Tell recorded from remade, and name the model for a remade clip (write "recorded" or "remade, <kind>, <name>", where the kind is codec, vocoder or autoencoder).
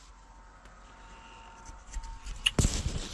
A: recorded